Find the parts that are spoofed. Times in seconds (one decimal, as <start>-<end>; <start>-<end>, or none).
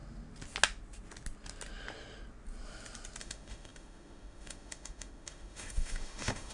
3.2-6.5